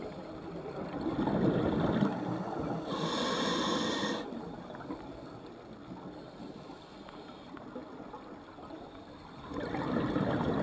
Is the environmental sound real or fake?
real